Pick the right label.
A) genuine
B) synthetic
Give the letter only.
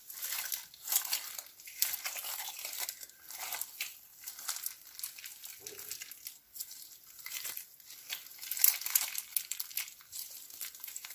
A